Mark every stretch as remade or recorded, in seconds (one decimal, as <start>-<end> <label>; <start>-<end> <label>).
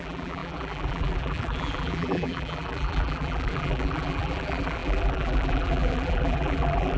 0.0-7.0 remade